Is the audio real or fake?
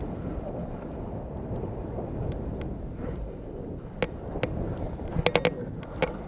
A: real